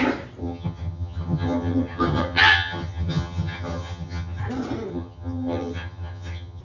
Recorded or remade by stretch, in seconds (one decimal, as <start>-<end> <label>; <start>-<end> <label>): 0.0-0.4 recorded; 0.4-4.4 remade; 4.4-4.9 recorded; 4.9-6.6 remade